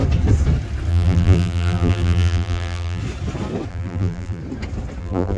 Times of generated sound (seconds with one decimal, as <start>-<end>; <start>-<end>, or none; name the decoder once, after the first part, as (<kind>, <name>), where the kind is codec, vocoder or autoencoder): 0.9-3.0 (vocoder, BigVGAN v2); 3.7-4.4; 5.0-5.4